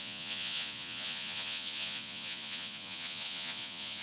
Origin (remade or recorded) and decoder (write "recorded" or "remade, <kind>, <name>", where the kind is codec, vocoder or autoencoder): remade, vocoder, Vocos